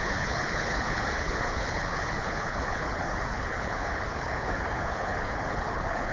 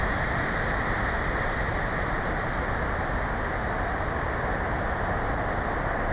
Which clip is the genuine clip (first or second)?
second